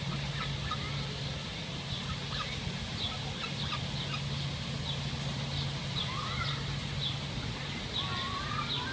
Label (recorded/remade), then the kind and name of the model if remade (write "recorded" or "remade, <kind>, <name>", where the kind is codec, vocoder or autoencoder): recorded